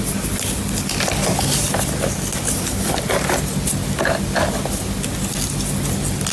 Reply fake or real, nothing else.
real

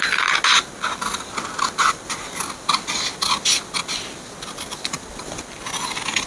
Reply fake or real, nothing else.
real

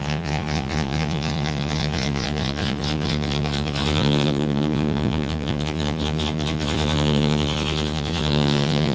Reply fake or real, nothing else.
fake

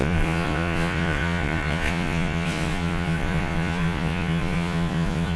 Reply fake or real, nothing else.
fake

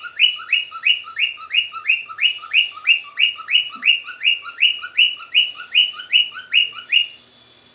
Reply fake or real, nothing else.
real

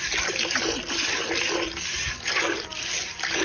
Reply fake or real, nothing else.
real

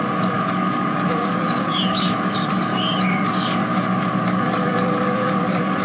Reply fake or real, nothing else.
fake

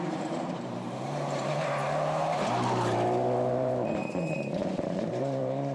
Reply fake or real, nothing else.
fake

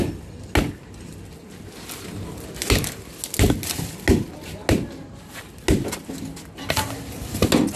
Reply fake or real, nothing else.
real